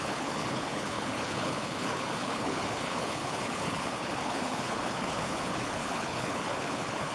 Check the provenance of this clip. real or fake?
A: fake